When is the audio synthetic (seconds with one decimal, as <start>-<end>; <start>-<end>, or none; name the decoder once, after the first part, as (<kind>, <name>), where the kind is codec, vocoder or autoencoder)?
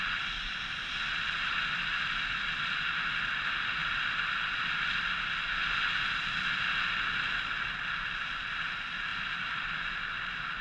9.1-9.8 (vocoder, BigVGAN v2)